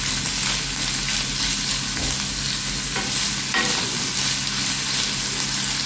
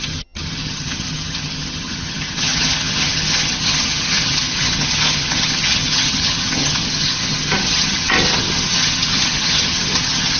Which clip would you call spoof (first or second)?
second